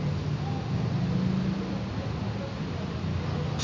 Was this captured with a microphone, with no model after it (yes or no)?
yes